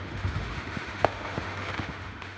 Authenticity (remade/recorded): remade